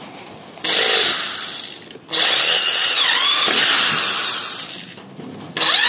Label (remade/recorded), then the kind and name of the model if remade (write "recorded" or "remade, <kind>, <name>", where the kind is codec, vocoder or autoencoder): recorded